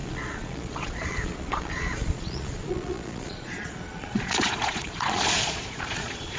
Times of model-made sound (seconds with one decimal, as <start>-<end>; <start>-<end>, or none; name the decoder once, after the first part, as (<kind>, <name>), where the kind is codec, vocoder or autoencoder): 0.0-6.4 (vocoder, Vocos)